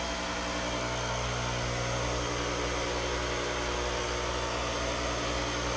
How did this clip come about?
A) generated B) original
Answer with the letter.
B